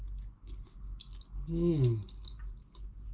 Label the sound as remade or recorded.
recorded